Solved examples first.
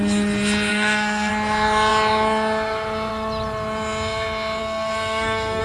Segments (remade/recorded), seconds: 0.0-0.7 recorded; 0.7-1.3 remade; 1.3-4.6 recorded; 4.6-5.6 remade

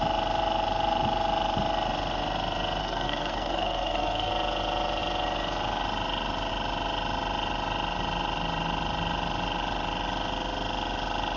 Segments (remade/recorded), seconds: 0.0-2.8 recorded; 2.8-4.3 remade; 4.3-11.4 recorded

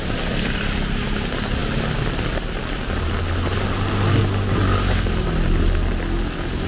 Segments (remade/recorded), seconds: 0.0-6.7 recorded

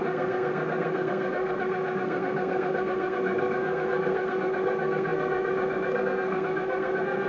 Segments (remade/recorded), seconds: 0.0-7.3 remade

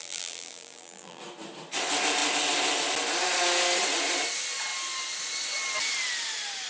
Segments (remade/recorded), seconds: 0.0-1.2 remade; 1.2-6.7 recorded

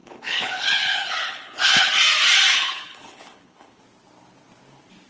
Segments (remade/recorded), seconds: 0.0-1.9 remade; 1.9-2.5 recorded; 2.5-3.8 remade; 3.8-5.1 recorded